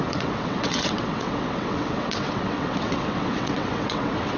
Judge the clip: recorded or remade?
remade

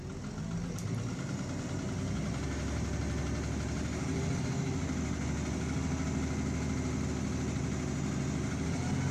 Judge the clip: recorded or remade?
recorded